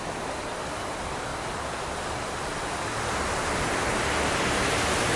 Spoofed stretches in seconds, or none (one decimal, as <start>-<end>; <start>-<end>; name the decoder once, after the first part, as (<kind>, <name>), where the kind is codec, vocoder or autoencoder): none

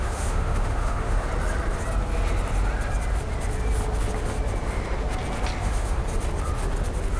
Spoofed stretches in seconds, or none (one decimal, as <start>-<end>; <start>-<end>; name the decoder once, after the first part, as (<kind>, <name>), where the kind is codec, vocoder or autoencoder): 0.0-1.3 (autoencoder, DAC-VAE); 5.6-6.0

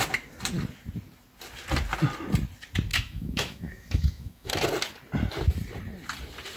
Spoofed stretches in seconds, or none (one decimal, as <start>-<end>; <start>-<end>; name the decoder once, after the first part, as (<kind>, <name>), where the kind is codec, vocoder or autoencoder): 2.9-4.5 (autoencoder, DAC-VAE)